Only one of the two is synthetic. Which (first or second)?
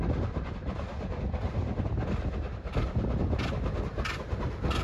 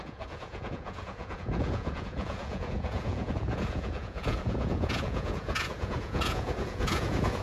second